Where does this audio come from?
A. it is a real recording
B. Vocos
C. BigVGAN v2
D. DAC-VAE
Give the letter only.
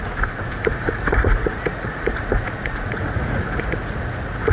B